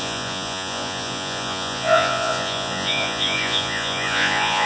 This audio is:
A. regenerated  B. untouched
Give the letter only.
A